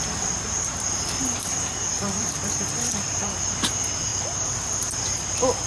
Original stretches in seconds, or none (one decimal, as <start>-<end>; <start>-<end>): 0.0-1.5; 3.4-4.1; 4.6-5.7